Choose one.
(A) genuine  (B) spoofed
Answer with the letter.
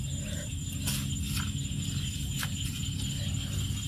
A